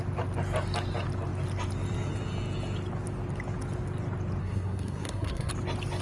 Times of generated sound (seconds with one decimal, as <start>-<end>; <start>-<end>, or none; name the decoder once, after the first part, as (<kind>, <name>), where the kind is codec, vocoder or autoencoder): 4.4-5.5 (codec, SNAC)